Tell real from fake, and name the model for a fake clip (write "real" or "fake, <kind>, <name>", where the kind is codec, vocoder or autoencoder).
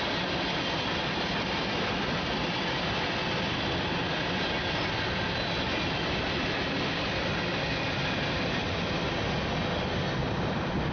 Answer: real